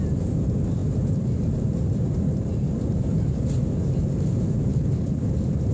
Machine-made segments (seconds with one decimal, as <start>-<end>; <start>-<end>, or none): 4.7-5.3